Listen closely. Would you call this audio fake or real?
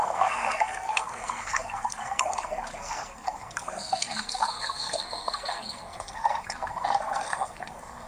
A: fake